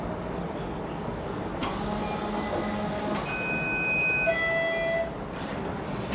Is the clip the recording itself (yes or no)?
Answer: yes